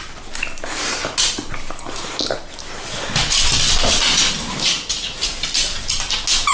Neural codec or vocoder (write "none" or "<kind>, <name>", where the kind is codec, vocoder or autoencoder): none